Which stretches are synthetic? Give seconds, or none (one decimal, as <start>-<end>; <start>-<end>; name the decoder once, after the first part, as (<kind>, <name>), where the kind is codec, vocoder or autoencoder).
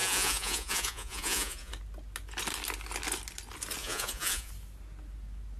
0.0-1.7 (vocoder, Vocos); 3.8-4.5